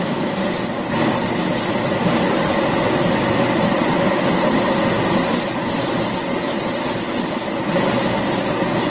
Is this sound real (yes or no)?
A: yes